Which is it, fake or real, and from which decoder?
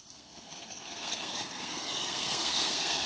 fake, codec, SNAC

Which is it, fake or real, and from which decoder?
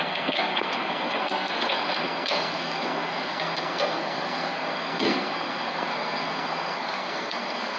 fake, codec, SNAC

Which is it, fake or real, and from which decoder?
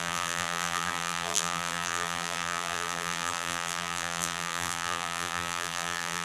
fake, vocoder, BigVGAN v2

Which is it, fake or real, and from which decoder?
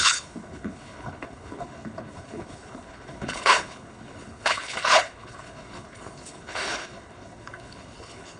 fake, codec, HILCodec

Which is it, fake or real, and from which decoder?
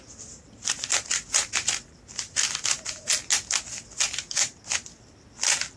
real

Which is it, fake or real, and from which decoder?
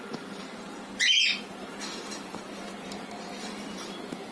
real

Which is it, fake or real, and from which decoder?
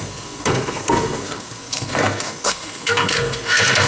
fake, codec, SNAC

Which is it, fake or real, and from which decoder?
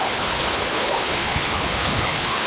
fake, codec, HILCodec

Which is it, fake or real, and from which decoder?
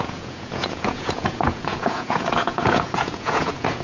fake, vocoder, Vocos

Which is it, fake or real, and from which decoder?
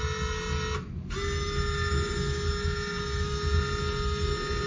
real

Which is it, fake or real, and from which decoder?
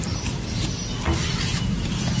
real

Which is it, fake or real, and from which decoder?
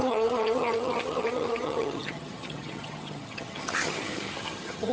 fake, vocoder, HiFi-GAN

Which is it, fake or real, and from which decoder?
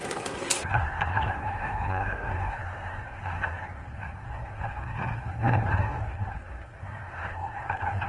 fake, codec, SNAC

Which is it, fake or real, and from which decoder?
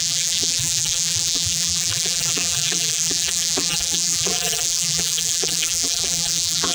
fake, vocoder, BigVGAN v2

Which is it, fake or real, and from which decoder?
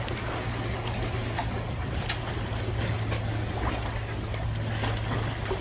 real